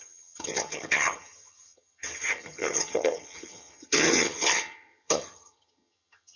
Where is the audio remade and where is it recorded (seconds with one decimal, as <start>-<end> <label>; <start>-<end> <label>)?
0.0-6.4 remade